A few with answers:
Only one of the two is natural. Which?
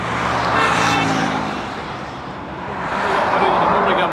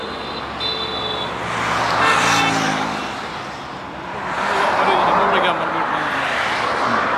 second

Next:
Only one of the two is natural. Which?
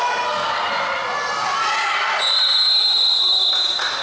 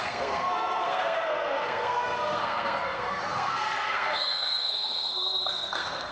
first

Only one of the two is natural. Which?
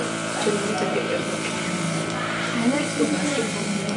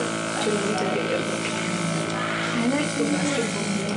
second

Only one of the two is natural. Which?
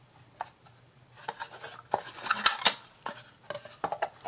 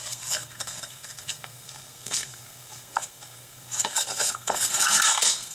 first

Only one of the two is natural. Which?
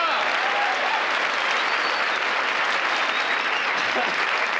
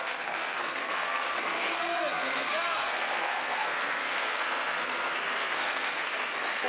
first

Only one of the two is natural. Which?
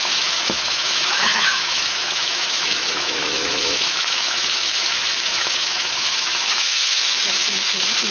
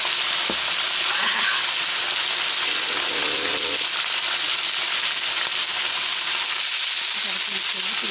second